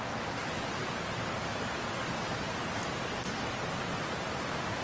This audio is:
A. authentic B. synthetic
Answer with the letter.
A